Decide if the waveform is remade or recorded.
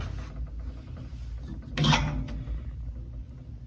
recorded